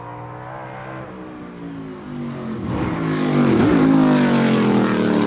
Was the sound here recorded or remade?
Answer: recorded